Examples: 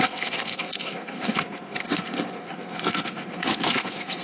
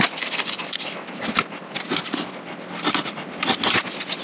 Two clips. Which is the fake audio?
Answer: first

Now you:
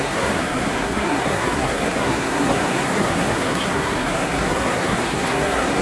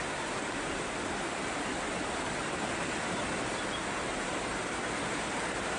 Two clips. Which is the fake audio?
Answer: first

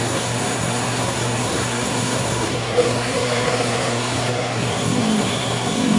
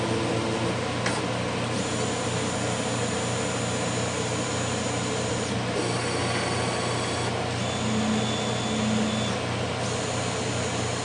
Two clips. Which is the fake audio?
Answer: first